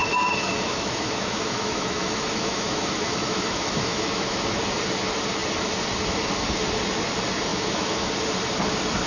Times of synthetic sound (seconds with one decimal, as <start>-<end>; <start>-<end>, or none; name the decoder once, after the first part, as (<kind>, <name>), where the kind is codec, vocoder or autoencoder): 0.0-4.6 (autoencoder, DAC-VAE); 7.5-8.1